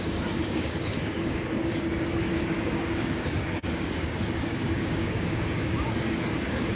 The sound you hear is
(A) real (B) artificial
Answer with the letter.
B